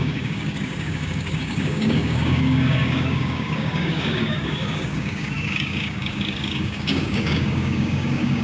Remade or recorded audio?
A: remade